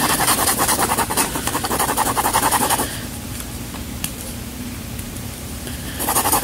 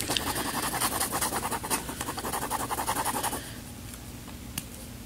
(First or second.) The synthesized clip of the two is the first